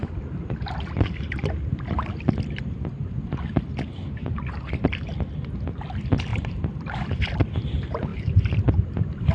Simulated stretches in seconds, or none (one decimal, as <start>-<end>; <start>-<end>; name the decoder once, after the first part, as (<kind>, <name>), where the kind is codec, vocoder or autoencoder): 0.0-0.9 (vocoder, BigVGAN v2); 2.9-3.5; 6.3-7.3; 8.1-8.6